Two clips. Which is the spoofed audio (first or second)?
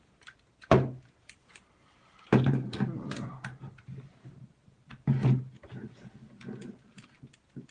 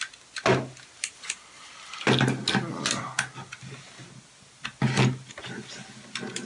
first